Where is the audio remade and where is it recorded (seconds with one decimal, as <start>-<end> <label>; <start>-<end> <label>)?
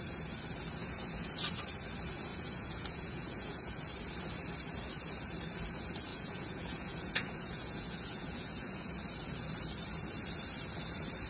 0.0-0.8 recorded; 0.8-1.3 remade; 1.3-2.3 recorded; 2.3-3.8 remade; 3.8-6.1 recorded; 6.1-8.9 remade; 8.9-11.3 recorded